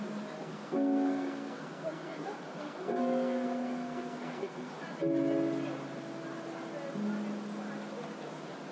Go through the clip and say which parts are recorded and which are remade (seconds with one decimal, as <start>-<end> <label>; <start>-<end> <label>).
0.0-0.4 recorded; 0.4-4.7 remade; 4.7-8.7 recorded